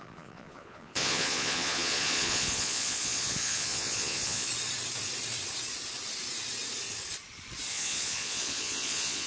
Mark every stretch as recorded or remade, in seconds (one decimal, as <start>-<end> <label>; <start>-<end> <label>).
0.0-4.5 remade; 4.5-7.7 recorded; 7.7-9.3 remade